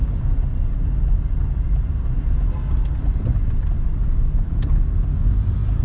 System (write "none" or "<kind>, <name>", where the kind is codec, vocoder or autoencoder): none